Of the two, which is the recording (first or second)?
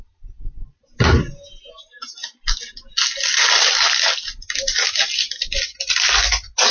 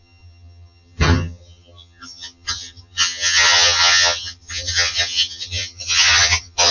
first